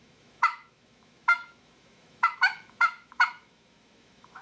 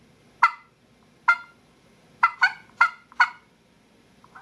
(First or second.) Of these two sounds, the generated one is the first